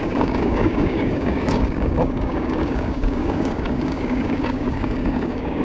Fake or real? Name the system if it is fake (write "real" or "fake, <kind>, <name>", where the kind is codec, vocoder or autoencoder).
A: fake, codec, DAC